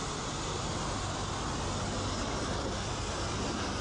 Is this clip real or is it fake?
real